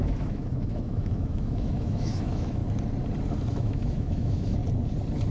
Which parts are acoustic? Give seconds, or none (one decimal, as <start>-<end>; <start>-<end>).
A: 2.6-3.5; 4.6-5.3